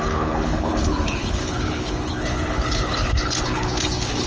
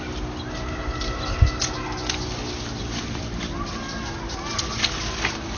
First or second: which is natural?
second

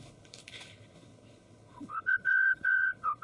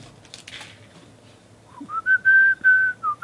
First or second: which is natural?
second